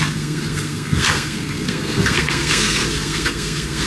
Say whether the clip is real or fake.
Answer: fake